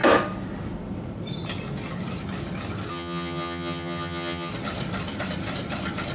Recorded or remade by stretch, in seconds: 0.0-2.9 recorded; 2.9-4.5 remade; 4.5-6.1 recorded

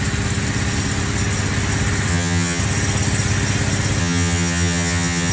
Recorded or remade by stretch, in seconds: 0.0-2.1 recorded; 2.1-2.6 remade; 2.6-4.0 recorded; 4.0-5.3 remade

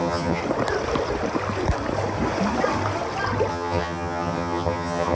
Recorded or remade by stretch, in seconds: 0.0-0.4 remade; 0.4-3.5 recorded; 3.5-5.1 remade

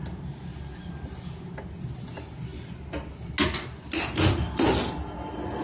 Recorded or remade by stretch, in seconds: 0.0-5.6 recorded

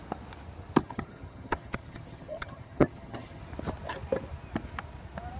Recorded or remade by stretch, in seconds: 0.0-0.8 recorded; 0.8-3.4 remade; 3.4-5.4 recorded

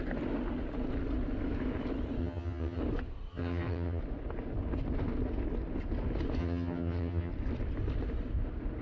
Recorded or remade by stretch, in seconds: 0.0-2.2 recorded; 2.2-2.8 remade; 2.8-3.3 recorded; 3.3-4.0 remade; 4.0-6.4 recorded; 6.4-7.3 remade; 7.3-8.8 recorded